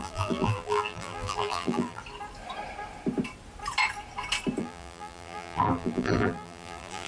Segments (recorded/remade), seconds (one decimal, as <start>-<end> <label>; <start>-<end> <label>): 0.0-2.0 remade; 2.0-4.6 recorded; 4.6-7.1 remade